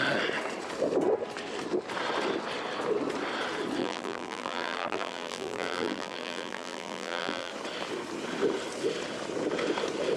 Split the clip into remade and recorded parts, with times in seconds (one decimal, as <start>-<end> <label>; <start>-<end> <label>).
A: 0.0-3.8 recorded; 3.8-7.5 remade; 7.5-10.2 recorded